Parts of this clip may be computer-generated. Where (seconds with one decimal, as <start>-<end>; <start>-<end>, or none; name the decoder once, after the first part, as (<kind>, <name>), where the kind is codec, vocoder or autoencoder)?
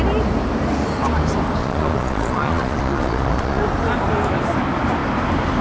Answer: 1.6-3.6 (vocoder, Vocos)